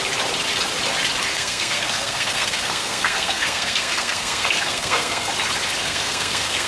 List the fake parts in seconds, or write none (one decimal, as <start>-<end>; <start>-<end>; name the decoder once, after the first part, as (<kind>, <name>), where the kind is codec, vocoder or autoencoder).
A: 1.3-5.3 (codec, SNAC); 5.8-6.7